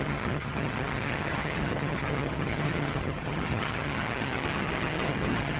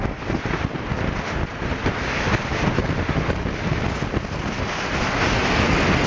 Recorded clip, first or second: second